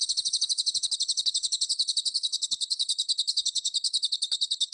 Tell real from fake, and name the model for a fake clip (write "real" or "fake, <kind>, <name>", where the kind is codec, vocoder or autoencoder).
fake, codec, HILCodec